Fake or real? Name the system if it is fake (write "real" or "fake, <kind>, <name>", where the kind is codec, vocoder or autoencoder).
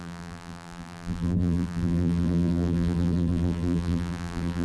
fake, vocoder, BigVGAN v2